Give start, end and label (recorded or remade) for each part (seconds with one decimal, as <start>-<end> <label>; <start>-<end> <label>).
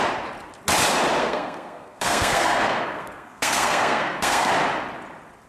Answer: 0.0-1.2 recorded; 1.2-4.5 remade; 4.5-5.5 recorded